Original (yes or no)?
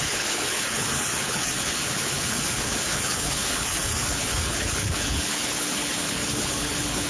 no